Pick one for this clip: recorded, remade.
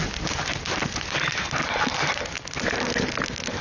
recorded